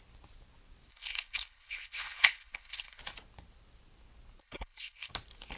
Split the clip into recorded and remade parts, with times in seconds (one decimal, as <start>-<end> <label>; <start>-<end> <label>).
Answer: 0.0-0.9 recorded; 0.9-3.0 remade; 3.0-4.4 recorded; 4.4-5.1 remade; 5.1-5.6 recorded